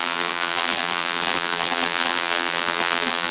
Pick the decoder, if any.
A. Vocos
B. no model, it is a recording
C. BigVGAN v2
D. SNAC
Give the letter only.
C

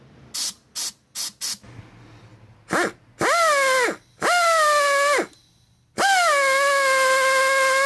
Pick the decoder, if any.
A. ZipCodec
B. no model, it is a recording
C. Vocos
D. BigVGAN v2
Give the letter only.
B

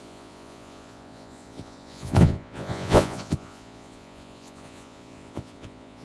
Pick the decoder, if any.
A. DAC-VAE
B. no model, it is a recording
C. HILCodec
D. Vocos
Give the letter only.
D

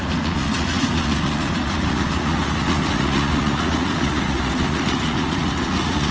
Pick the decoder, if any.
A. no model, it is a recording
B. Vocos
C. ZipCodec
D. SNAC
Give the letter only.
B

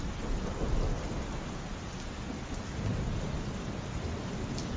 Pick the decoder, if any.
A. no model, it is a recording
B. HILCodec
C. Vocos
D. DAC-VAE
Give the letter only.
A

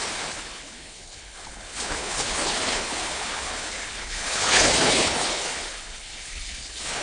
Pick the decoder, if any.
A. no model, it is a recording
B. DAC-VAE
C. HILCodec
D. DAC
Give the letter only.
C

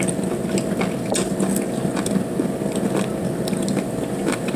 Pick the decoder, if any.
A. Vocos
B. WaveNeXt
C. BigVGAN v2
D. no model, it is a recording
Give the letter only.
D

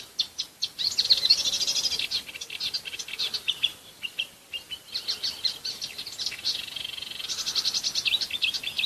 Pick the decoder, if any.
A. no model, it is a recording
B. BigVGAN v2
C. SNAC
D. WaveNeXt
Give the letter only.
A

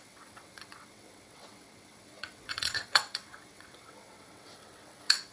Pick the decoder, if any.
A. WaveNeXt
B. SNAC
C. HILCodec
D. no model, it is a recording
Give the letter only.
A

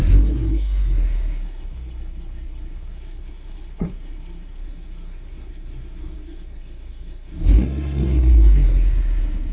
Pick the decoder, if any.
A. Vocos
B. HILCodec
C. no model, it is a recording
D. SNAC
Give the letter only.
D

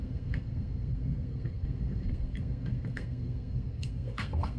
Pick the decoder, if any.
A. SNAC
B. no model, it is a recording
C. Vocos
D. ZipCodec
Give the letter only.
A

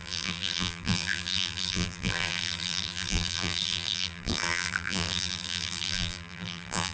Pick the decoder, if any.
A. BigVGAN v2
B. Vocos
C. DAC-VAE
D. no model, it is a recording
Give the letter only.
A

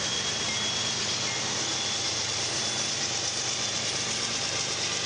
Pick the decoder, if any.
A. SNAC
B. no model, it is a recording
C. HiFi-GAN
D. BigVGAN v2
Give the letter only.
D